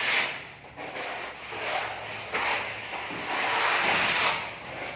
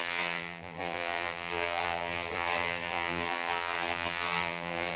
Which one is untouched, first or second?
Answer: first